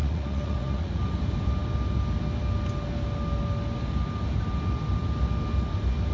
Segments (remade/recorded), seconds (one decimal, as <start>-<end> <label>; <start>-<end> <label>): 0.0-1.0 remade; 1.0-6.1 recorded